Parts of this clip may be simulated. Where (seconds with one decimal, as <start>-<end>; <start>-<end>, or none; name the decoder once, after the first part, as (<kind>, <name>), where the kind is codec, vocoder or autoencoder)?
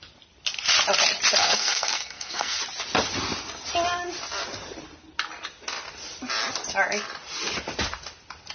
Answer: 1.4-2.6 (codec, SNAC)